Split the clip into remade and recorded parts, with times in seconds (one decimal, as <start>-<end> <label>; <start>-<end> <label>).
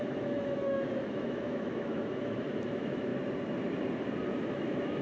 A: 0.0-3.1 remade; 3.1-4.5 recorded; 4.5-5.0 remade